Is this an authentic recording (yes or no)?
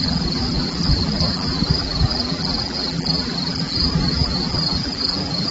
no